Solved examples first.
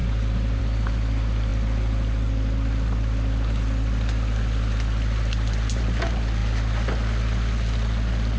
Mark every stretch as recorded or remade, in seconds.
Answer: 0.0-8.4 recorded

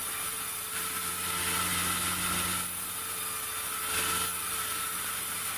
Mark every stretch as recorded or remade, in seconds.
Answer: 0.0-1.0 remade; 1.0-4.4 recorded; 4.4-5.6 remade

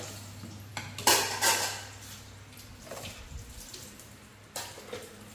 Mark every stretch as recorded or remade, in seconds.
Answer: 0.0-5.3 recorded

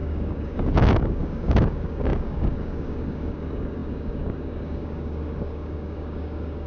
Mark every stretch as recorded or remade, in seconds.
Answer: 0.0-6.7 remade

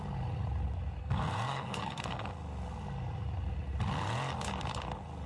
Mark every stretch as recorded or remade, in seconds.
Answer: 0.0-1.0 recorded; 1.0-2.3 remade; 2.3-5.3 recorded

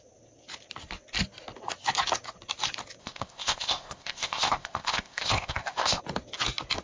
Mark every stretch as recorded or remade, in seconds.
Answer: 0.0-3.0 recorded; 3.0-6.0 remade; 6.0-6.8 recorded

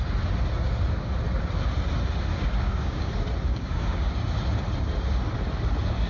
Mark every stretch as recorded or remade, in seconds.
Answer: 0.0-2.3 recorded; 2.3-3.1 remade; 3.1-3.5 recorded; 3.5-4.1 remade; 4.1-6.1 recorded